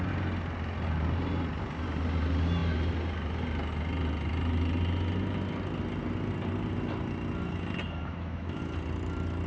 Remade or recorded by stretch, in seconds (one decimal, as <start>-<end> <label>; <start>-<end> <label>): 0.0-8.0 recorded; 8.0-8.6 remade; 8.6-9.5 recorded